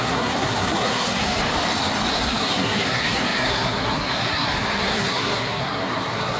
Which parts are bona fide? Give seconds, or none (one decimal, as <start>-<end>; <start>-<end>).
1.4-2.1